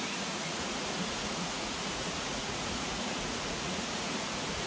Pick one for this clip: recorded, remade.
remade